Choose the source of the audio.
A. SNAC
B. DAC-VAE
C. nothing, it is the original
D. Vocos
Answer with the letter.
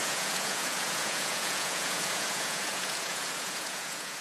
D